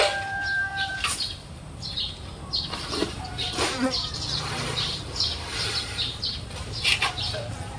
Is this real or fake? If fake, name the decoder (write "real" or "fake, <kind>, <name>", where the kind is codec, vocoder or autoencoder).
fake, vocoder, BigVGAN v2